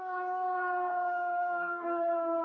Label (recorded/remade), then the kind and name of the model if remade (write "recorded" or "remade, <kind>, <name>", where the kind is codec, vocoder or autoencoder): remade, codec, DAC